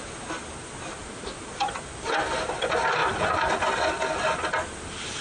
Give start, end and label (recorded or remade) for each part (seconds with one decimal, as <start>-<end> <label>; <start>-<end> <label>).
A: 0.0-1.0 recorded; 1.0-1.8 remade; 1.8-5.2 recorded